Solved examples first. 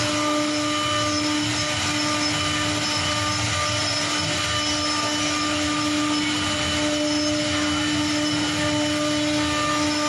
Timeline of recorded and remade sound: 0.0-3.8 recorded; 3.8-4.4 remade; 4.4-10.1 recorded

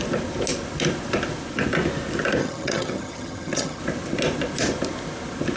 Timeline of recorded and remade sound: 0.0-2.4 recorded; 2.4-3.8 remade; 3.8-5.6 recorded

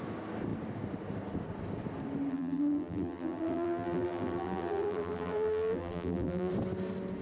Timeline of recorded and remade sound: 0.0-2.3 recorded; 2.3-6.5 remade; 6.5-7.2 recorded

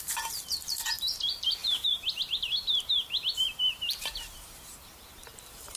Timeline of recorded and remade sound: 0.0-5.8 remade

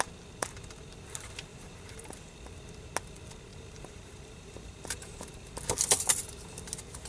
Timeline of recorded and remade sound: 0.0-1.5 recorded; 1.5-2.3 remade; 2.3-3.5 recorded; 3.5-5.5 remade; 5.5-7.1 recorded

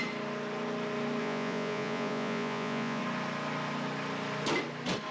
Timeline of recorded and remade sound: 0.0-1.2 recorded; 1.2-3.0 remade; 3.0-5.1 recorded

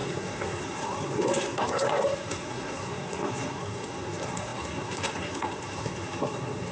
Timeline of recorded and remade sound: 0.0-6.7 remade